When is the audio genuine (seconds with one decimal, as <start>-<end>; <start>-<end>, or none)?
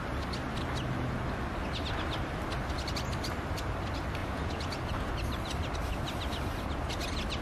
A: 0.0-4.2; 5.1-7.4